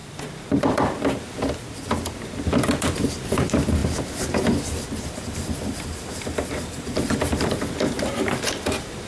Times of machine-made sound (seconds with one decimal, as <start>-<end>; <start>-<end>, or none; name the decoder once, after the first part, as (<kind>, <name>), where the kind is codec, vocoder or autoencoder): 0.0-9.1 (vocoder, BigVGAN v2)